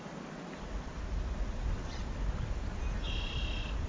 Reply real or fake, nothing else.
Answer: real